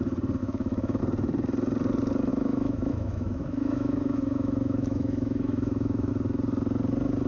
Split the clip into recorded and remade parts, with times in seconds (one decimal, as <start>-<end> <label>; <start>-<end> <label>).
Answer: 0.0-0.4 recorded; 0.4-1.0 remade; 1.0-2.3 recorded; 2.3-6.1 remade; 6.1-7.3 recorded